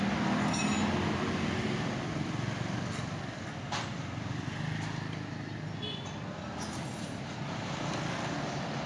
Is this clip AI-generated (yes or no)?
no